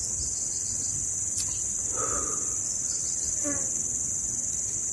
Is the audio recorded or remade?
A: recorded